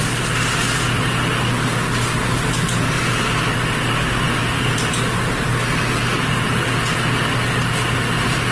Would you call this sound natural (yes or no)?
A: yes